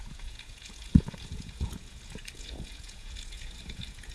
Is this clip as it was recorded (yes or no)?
no